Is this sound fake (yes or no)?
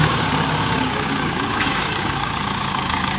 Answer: yes